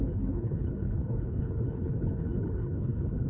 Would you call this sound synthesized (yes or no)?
yes